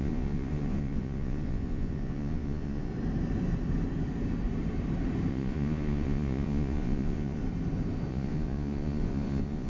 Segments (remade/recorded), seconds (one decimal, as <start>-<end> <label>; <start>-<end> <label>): 0.0-2.9 remade; 2.9-5.3 recorded; 5.3-7.4 remade; 7.4-8.1 recorded; 8.1-9.7 remade